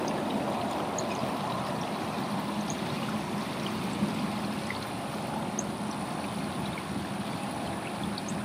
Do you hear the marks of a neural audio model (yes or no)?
no